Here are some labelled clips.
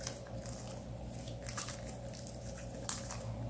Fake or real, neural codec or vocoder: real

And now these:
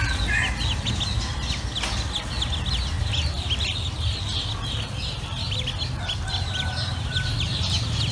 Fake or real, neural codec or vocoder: real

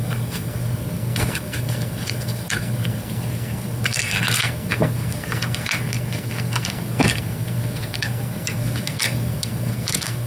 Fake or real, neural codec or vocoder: fake, codec, SNAC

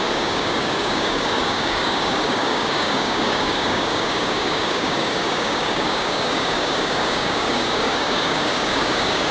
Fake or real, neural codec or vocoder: fake, codec, DAC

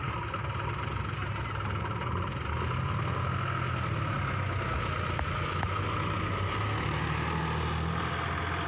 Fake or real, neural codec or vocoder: real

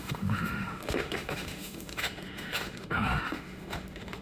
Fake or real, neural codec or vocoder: fake, autoencoder, DAC-VAE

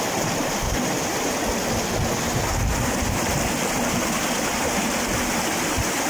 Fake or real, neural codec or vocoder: real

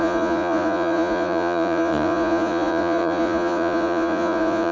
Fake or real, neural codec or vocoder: fake, vocoder, Vocos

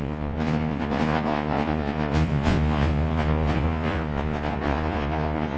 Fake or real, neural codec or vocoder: fake, vocoder, Vocos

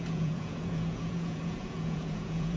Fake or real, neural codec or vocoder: fake, vocoder, Vocos